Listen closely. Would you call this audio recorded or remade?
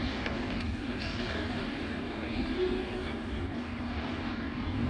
remade